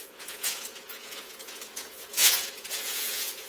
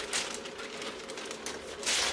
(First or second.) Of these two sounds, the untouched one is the second